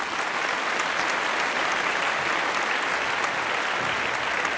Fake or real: real